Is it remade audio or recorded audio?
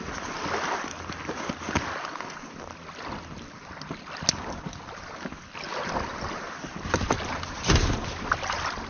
recorded